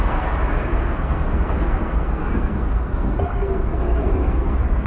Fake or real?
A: fake